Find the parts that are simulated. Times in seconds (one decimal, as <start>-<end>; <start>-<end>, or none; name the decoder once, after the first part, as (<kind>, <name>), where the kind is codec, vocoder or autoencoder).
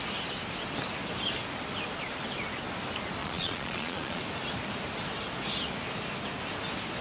3.2-4.2 (vocoder, Vocos)